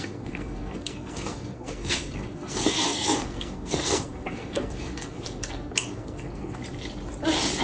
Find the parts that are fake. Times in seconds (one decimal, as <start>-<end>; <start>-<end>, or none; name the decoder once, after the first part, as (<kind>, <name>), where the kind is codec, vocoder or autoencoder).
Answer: 0.0-6.6 (codec, SNAC)